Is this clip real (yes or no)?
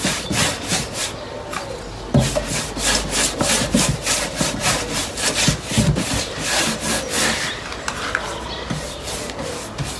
yes